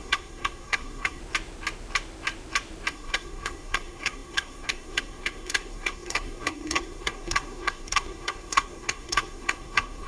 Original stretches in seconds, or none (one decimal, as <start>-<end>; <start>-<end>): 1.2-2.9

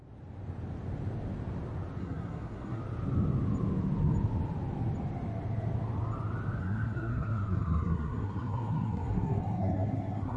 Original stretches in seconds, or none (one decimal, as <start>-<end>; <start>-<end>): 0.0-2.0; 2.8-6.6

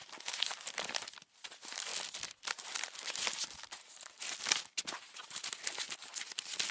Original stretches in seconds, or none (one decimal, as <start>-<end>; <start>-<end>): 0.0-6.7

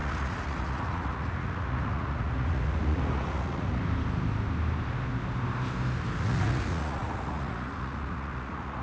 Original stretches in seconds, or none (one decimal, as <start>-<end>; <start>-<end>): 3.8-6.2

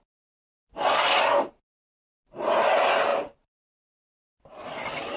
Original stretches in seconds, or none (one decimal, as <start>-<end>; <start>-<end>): 0.0-3.1; 4.2-5.2